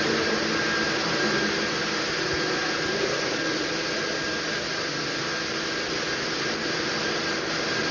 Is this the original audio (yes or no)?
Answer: yes